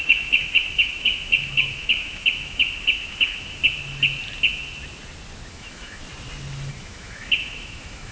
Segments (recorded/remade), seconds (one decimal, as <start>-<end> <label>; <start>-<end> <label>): 0.0-3.6 remade; 3.6-5.5 recorded; 5.5-6.0 remade; 6.0-6.7 recorded; 6.7-8.1 remade